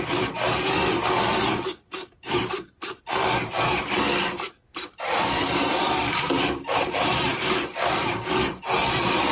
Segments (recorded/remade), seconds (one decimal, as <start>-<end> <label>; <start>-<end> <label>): 0.0-1.3 remade; 1.3-3.0 recorded; 3.0-9.3 remade